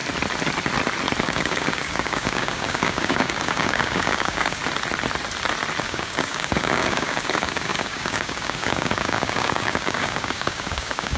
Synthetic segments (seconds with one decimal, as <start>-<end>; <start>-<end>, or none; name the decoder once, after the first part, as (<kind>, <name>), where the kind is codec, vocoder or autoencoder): 1.2-4.6 (codec, DAC); 5.8-11.2